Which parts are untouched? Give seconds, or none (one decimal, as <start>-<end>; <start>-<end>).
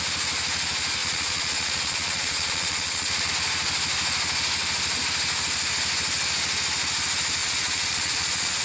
0.0-1.0; 3.3-7.4